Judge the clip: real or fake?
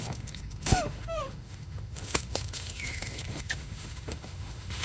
fake